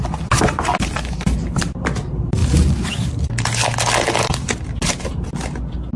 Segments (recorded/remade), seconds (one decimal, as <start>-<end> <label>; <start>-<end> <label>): 0.0-6.0 recorded